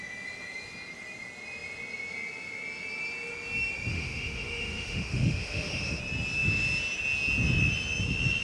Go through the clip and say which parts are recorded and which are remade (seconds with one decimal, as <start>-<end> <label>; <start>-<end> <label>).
0.0-3.9 recorded; 3.9-6.0 remade; 6.0-8.4 recorded